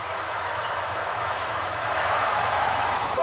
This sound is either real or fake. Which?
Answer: fake